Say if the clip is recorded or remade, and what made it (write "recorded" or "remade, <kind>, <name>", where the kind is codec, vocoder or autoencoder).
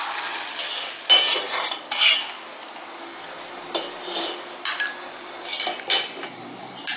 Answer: recorded